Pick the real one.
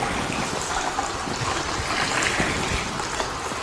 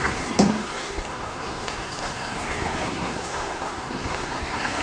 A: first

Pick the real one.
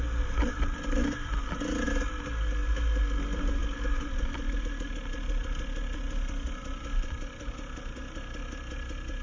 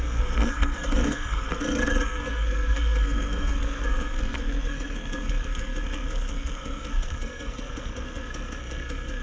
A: first